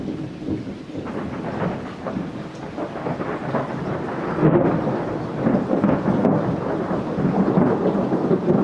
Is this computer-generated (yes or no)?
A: no